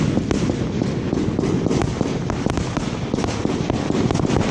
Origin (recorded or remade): recorded